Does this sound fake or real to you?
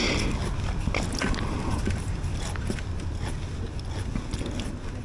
real